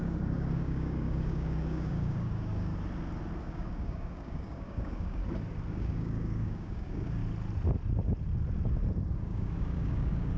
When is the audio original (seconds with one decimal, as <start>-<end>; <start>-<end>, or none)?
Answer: 2.7-3.4; 5.2-5.7; 7.2-9.1